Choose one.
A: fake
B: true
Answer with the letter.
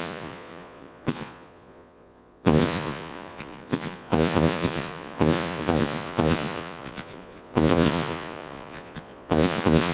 A